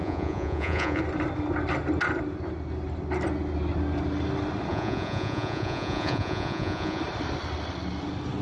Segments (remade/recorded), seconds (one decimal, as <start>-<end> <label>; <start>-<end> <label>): 0.0-1.0 remade; 1.0-4.7 recorded; 4.7-7.0 remade; 7.0-8.4 recorded